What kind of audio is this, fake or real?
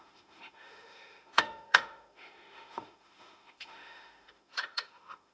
fake